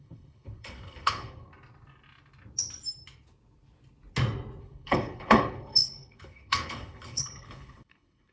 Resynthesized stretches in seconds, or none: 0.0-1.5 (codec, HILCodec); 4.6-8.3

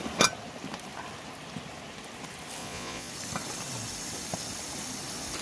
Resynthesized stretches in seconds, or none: 2.6-3.1 (vocoder, Vocos)

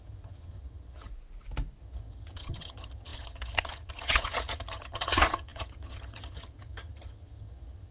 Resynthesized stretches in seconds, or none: 0.0-1.1 (vocoder, HiFi-GAN); 1.8-7.9

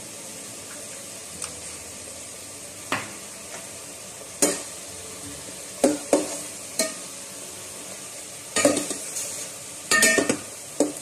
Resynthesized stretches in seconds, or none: 1.2-2.6 (vocoder, BigVGAN v2); 5.8-10.0

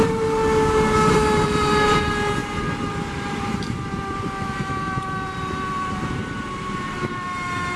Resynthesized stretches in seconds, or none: 0.0-0.4 (vocoder, BigVGAN v2); 1.1-7.8

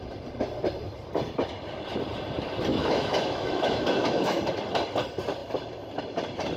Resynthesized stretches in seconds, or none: 2.7-4.4 (autoencoder, DAC-VAE)

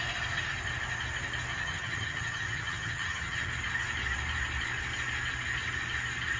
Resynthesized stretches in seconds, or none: 1.5-3.5 (vocoder, HiFi-GAN)

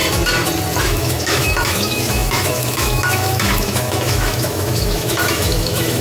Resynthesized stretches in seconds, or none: 0.8-6.0 (autoencoder, DAC-VAE)